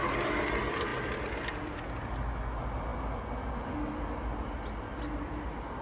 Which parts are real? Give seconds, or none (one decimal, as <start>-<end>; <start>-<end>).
0.0-5.8